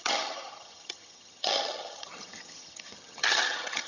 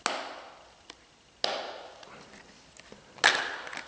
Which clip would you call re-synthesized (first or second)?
first